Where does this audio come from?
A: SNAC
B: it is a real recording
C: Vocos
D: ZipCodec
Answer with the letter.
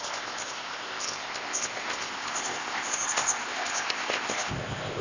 D